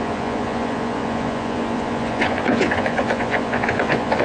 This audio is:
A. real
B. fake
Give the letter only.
B